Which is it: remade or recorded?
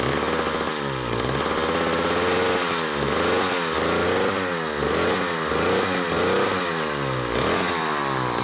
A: recorded